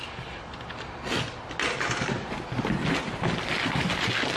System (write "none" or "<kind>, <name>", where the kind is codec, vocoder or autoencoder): none